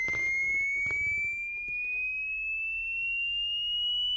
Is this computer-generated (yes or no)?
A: no